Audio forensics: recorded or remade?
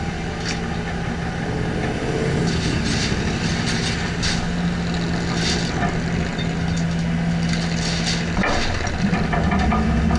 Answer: recorded